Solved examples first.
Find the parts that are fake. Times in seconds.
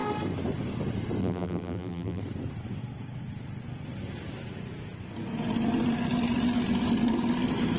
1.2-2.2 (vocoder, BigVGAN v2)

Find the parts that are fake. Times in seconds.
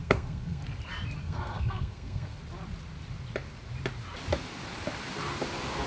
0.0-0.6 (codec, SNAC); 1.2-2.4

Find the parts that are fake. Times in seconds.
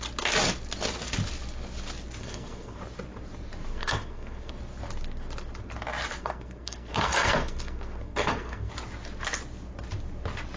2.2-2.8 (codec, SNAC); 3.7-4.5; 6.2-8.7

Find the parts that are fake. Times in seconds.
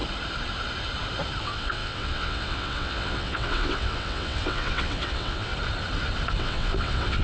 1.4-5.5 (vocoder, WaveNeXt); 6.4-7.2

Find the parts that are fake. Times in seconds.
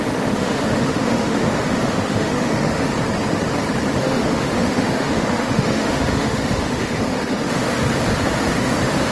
0.0-2.9 (autoencoder, DAC-VAE); 3.9-7.7; 8.6-9.1